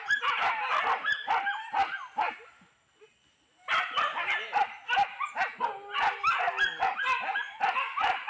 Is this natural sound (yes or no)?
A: yes